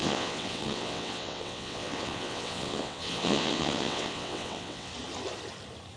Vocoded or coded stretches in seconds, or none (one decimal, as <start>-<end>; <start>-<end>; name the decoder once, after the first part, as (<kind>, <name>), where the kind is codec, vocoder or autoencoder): 0.0-4.9 (vocoder, WaveNeXt)